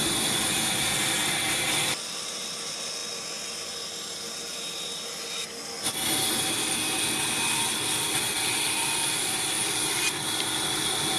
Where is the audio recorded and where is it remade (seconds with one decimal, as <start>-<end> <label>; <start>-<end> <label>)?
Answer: 0.0-11.2 recorded